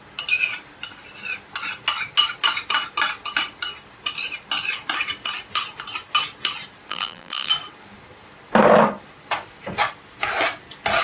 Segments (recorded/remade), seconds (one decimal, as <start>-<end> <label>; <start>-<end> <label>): 0.0-6.9 recorded; 6.9-7.5 remade; 7.5-11.0 recorded